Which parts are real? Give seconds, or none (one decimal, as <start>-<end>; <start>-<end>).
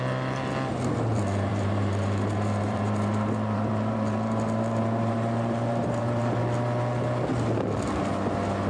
0.0-1.5; 6.4-8.7